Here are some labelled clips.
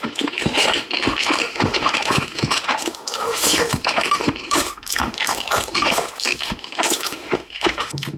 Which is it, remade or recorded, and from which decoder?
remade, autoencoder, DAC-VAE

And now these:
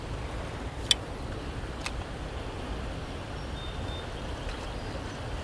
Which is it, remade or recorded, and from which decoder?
recorded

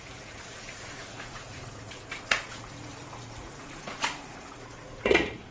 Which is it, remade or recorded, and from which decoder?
remade, vocoder, Vocos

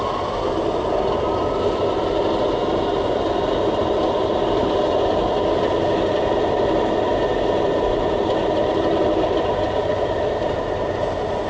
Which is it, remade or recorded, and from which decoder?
recorded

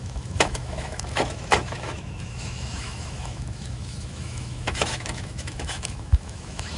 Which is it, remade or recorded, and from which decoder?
remade, autoencoder, DAC-VAE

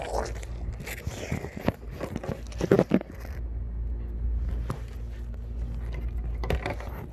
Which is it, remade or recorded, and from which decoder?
recorded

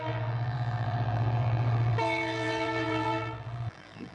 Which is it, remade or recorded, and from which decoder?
remade, vocoder, BigVGAN v2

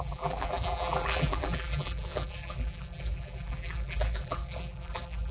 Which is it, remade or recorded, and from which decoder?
remade, vocoder, BigVGAN v2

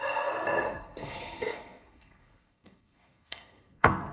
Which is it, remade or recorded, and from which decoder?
remade, codec, SNAC